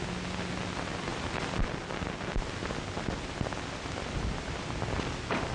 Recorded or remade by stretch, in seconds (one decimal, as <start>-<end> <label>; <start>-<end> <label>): 0.0-5.5 recorded